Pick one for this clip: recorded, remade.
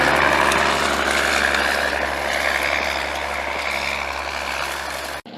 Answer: recorded